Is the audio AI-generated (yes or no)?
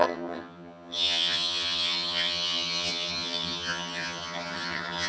yes